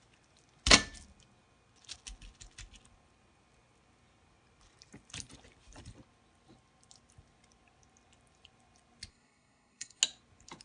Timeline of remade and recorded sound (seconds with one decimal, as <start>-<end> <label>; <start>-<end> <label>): 0.0-9.1 recorded; 9.1-10.0 remade; 10.0-10.6 recorded